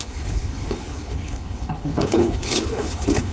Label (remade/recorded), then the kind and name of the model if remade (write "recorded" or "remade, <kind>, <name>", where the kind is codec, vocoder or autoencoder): remade, codec, HILCodec